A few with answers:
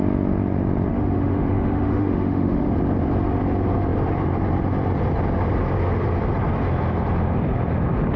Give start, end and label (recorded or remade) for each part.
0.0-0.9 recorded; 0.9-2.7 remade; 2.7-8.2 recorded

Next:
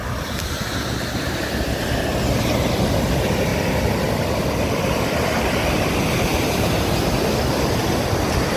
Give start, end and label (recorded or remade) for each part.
0.0-8.6 recorded

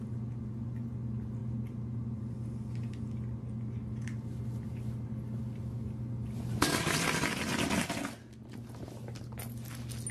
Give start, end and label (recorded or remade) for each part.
0.0-10.1 recorded

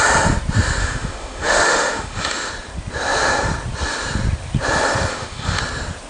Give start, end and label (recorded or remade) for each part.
0.0-0.8 recorded; 0.8-2.5 remade; 2.5-5.1 recorded; 5.1-5.6 remade; 5.6-6.1 recorded

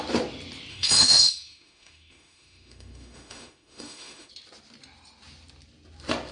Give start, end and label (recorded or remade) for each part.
0.0-0.7 recorded; 0.7-4.3 remade; 4.3-6.3 recorded

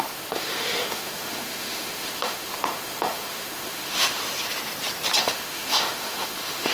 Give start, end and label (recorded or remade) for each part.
0.0-4.2 remade; 4.2-5.2 recorded; 5.2-6.7 remade

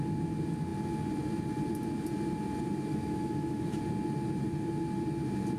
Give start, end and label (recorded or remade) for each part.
0.0-2.9 recorded; 2.9-3.8 remade; 3.8-5.6 recorded

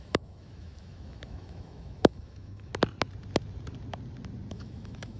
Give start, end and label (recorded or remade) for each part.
0.0-2.7 remade; 2.7-4.5 recorded; 4.5-5.2 remade